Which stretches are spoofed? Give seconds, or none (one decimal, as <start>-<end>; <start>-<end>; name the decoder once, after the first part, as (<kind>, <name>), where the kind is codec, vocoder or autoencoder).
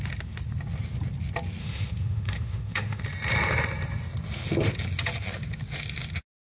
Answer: 1.6-3.0 (autoencoder, DAC-VAE)